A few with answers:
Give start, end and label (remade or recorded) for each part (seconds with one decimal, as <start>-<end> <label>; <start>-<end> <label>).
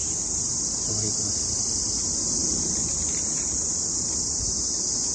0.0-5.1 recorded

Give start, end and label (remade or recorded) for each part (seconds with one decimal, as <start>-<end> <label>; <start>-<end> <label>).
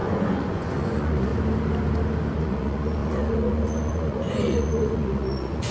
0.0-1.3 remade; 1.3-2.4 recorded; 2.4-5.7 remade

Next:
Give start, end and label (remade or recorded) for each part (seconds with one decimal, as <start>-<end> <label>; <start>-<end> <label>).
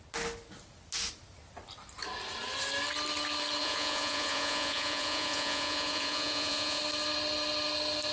0.0-3.6 recorded; 3.6-6.8 remade; 6.8-8.1 recorded